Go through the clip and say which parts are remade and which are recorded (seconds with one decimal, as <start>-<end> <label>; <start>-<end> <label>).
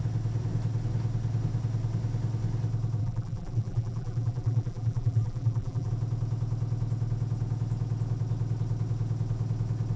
0.0-3.0 recorded; 3.0-5.9 remade; 5.9-10.0 recorded